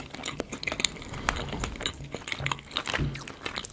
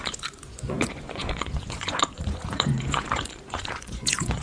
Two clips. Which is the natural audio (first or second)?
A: first